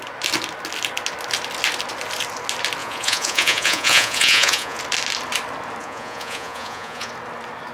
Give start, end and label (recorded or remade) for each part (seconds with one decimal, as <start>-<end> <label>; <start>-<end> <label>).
0.0-2.8 recorded; 2.8-4.8 remade; 4.8-5.8 recorded; 5.8-7.1 remade; 7.1-7.7 recorded